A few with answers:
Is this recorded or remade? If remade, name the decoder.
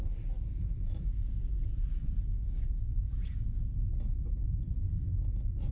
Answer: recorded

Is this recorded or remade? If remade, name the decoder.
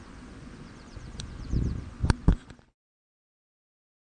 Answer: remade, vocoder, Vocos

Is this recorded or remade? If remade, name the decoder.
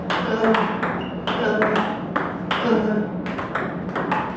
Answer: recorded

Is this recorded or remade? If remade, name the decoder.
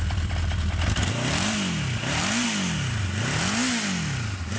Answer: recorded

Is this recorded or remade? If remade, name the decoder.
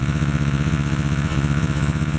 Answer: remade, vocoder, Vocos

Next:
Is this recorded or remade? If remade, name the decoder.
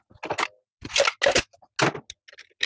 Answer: recorded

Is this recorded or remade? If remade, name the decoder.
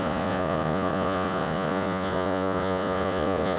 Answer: remade, vocoder, Vocos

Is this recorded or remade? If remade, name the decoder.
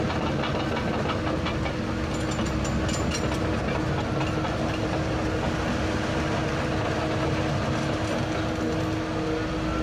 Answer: recorded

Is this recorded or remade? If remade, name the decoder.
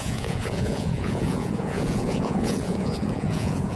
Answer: remade, vocoder, Vocos